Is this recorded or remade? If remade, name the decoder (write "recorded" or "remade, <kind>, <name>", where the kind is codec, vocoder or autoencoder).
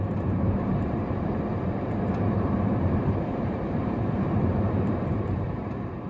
remade, vocoder, BigVGAN v2